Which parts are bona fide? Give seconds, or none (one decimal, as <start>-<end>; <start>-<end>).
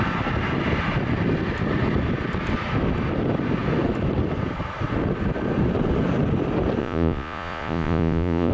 0.0-6.8